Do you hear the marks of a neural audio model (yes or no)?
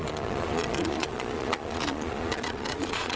yes